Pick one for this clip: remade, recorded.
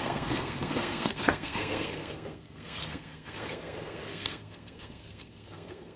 remade